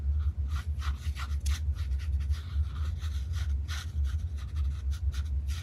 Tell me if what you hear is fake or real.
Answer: real